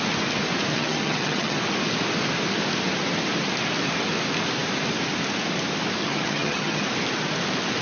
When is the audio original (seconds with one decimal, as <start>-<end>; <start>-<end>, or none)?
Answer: 0.0-0.7; 1.6-6.0; 6.8-7.8

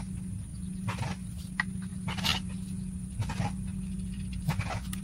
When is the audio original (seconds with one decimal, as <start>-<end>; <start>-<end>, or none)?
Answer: 0.0-5.0

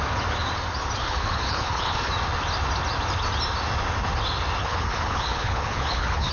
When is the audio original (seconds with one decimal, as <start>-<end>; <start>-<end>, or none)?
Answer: 0.0-1.0; 2.1-4.6

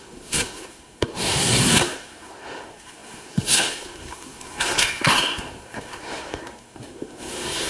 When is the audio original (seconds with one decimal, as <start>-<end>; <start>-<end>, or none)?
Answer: none

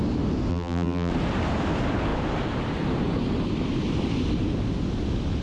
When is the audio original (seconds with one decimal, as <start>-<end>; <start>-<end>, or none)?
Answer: 0.0-0.5; 1.1-5.4

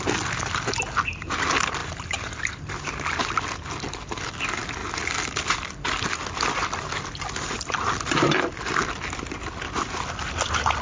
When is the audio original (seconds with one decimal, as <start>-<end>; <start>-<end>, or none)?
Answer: 0.0-10.8

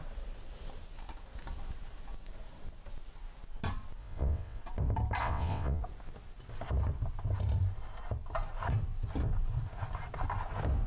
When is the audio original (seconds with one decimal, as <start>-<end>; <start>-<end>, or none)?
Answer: 0.0-4.0; 4.6-5.2; 5.8-10.9

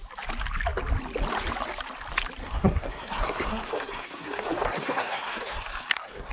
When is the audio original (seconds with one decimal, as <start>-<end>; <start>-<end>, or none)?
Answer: 0.0-2.4